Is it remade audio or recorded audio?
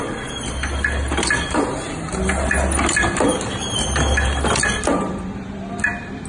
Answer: recorded